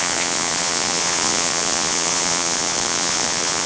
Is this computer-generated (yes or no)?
yes